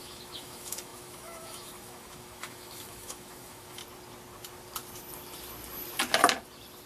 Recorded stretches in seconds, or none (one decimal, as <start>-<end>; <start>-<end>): 3.8-6.9